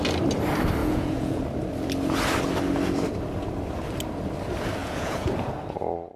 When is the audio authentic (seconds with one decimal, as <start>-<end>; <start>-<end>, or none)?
0.0-0.8; 1.4-4.8; 5.5-6.2